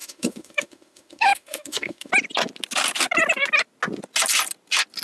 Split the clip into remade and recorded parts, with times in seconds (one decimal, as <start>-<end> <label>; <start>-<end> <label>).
0.0-2.1 remade; 2.1-5.0 recorded